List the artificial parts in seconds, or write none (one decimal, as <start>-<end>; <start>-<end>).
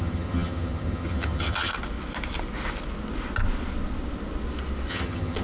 0.0-1.7; 4.9-5.4